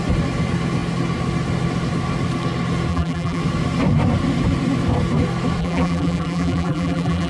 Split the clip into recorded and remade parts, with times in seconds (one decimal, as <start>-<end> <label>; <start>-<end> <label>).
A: 0.0-2.9 recorded; 2.9-3.4 remade; 3.4-5.6 recorded; 5.6-7.3 remade